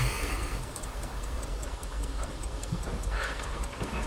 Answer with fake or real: fake